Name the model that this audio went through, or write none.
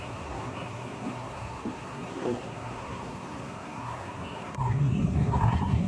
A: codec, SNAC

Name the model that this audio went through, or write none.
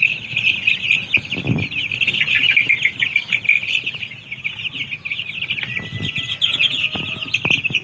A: none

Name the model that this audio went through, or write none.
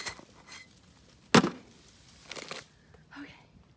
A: none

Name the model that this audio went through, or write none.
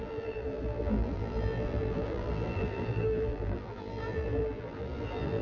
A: vocoder, BigVGAN v2